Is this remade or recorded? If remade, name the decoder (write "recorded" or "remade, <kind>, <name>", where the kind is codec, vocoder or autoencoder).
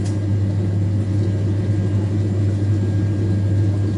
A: recorded